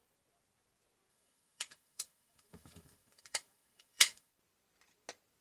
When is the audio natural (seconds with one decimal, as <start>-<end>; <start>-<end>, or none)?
0.0-1.1; 4.3-5.4